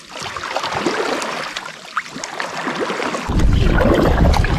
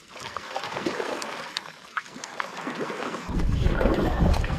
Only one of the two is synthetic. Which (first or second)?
second